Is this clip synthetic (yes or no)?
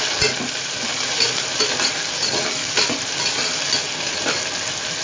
no